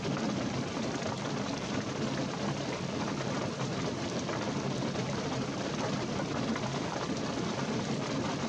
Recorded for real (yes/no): yes